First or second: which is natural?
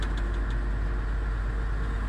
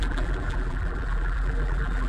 first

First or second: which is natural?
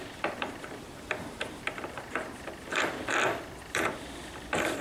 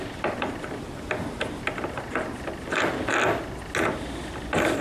second